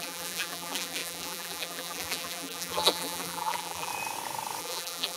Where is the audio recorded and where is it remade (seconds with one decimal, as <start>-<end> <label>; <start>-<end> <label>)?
0.0-3.9 remade; 3.9-4.6 recorded; 4.6-5.2 remade